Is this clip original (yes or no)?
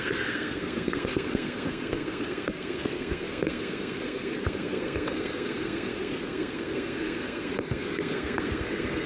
no